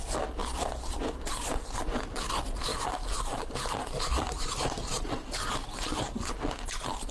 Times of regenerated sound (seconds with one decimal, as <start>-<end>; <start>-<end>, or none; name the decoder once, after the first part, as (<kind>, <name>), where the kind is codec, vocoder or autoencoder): 0.0-0.4 (vocoder, BigVGAN v2); 1.0-7.1